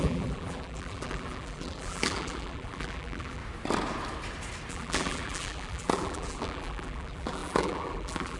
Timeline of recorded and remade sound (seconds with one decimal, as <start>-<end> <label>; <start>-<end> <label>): 0.0-3.4 remade; 3.4-4.7 recorded; 4.7-8.4 remade